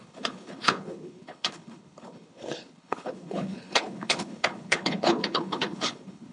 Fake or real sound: fake